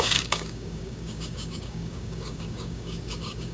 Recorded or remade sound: remade